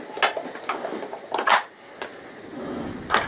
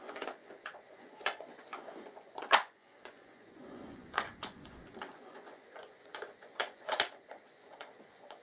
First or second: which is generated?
second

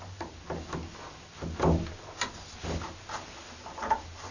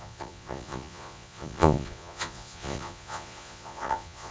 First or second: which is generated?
second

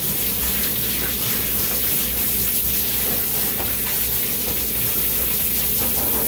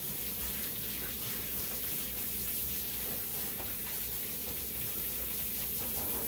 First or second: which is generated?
second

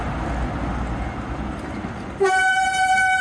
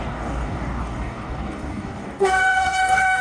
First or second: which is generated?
second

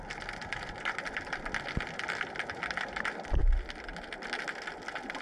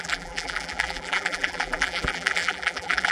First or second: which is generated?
second